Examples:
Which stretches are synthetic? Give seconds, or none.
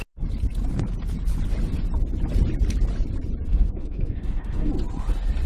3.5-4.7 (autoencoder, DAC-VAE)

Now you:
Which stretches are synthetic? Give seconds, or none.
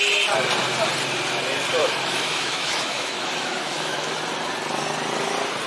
1.8-4.2 (autoencoder, DAC-VAE)